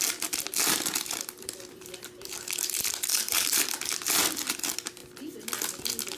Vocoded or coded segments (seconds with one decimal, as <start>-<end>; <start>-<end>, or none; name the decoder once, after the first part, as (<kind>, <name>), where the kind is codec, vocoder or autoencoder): 3.1-3.7 (vocoder, BigVGAN v2)

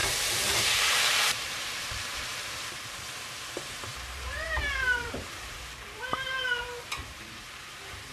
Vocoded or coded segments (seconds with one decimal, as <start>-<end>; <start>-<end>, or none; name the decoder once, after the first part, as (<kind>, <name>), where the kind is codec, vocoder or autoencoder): 0.0-8.1 (vocoder, BigVGAN v2)